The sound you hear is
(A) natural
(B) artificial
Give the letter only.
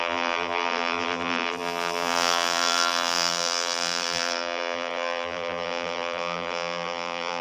B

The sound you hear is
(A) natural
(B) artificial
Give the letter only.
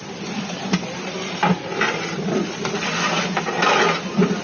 B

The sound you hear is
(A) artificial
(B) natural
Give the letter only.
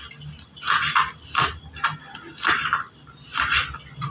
B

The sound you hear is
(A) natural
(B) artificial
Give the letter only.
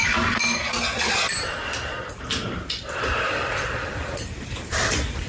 B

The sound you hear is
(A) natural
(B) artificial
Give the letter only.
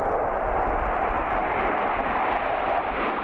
A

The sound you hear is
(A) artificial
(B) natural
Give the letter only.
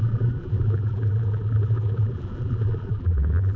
A